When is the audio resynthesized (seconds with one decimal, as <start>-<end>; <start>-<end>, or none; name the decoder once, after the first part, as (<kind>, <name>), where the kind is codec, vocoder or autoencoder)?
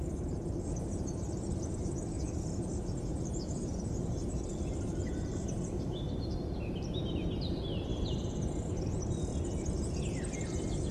4.5-5.3 (vocoder, BigVGAN v2); 7.9-9.0